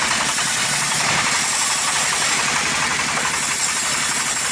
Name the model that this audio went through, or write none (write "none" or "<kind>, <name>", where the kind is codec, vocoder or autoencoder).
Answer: vocoder, BigVGAN v2